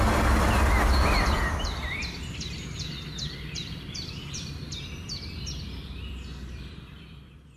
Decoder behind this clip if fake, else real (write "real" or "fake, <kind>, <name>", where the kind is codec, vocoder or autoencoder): fake, vocoder, BigVGAN v2